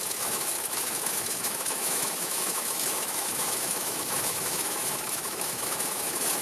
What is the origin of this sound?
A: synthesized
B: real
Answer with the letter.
A